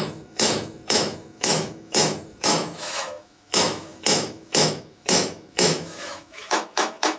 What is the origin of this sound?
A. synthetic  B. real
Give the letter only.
A